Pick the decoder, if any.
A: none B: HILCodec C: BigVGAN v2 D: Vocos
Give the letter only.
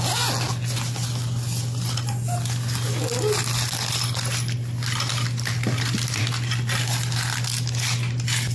A